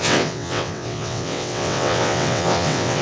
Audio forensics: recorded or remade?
remade